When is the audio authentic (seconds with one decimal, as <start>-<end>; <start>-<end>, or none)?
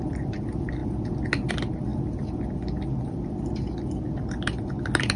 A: 0.0-5.2